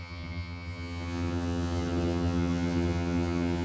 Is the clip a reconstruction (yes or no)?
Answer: yes